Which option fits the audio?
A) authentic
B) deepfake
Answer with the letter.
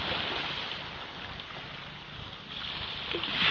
A